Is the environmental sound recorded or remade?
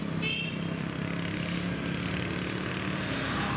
recorded